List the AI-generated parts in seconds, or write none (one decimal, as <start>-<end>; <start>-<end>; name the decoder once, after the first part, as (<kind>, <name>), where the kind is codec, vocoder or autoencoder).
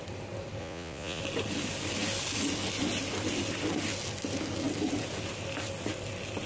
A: 0.6-1.2 (vocoder, Vocos)